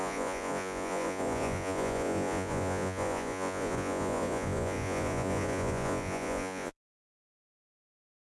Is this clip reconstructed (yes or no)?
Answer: yes